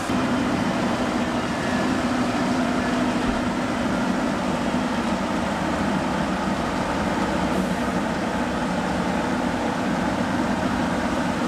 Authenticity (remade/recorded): remade